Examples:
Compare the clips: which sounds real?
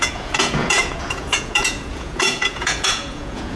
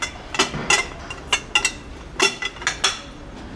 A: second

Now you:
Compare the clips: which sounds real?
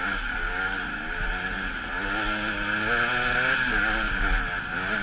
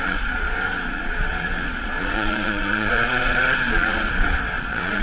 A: first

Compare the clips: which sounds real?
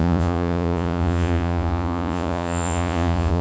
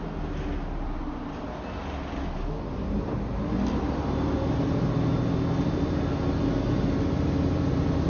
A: second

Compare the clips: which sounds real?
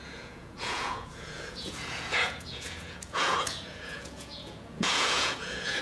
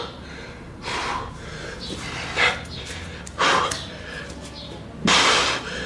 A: second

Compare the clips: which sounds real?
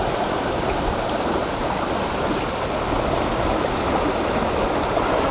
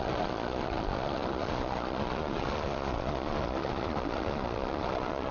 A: first